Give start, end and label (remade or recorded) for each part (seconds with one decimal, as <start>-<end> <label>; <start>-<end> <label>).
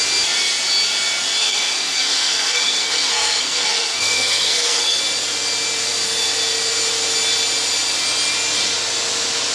0.0-1.4 recorded; 1.4-5.0 remade; 5.0-9.5 recorded